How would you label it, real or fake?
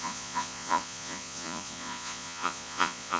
fake